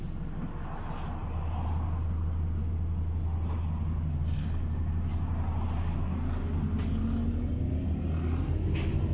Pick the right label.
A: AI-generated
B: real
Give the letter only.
B